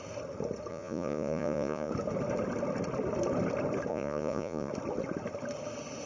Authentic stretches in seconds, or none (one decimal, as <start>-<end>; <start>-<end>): 0.0-0.7; 1.9-3.9; 4.7-6.1